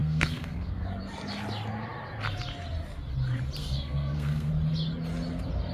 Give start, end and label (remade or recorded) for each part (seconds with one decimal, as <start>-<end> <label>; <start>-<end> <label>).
0.0-0.8 remade; 0.8-3.6 recorded; 3.6-4.5 remade; 4.5-5.7 recorded